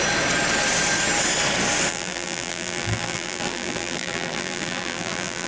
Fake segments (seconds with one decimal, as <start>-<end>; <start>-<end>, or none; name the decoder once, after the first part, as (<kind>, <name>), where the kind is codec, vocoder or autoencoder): 1.9-5.5 (vocoder, BigVGAN v2)